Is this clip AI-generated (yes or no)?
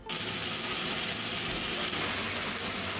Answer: no